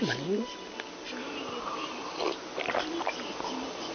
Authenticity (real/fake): real